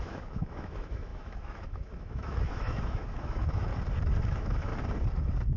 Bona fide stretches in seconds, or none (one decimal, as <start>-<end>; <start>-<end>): 3.7-4.3; 4.7-5.6